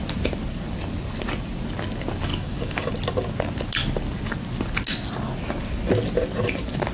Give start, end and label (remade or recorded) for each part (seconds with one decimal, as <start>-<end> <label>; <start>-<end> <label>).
0.0-2.3 recorded; 2.3-2.9 remade; 2.9-6.9 recorded